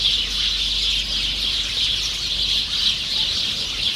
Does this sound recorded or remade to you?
recorded